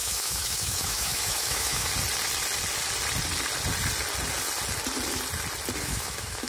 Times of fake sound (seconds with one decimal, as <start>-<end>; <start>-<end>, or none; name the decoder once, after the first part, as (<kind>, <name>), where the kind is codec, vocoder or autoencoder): 0.0-1.9 (autoencoder, DAC-VAE); 5.8-6.5